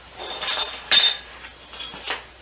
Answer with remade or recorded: recorded